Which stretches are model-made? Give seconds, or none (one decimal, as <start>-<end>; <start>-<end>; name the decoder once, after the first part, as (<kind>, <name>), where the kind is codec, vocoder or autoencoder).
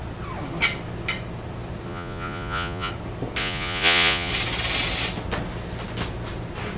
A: 1.9-2.9 (vocoder, Vocos); 3.4-4.3